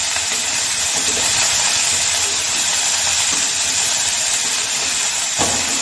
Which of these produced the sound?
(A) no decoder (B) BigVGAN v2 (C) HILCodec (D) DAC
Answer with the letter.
A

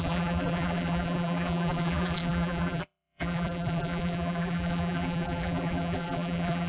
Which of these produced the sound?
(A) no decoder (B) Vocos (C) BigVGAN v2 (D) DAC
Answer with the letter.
C